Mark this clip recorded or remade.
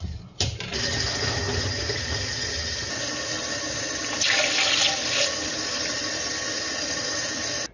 recorded